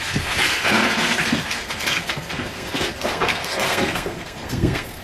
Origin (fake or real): fake